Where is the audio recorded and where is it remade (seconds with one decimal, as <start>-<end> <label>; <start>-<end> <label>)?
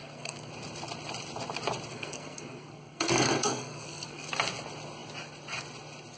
0.0-0.5 remade; 0.5-1.9 recorded; 1.9-4.3 remade; 4.3-6.2 recorded